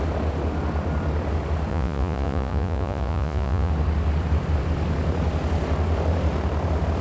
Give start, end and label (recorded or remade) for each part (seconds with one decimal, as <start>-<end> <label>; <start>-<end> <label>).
0.0-1.7 recorded; 1.7-3.7 remade; 3.7-7.0 recorded